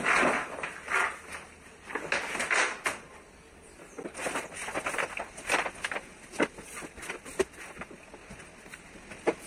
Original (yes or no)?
yes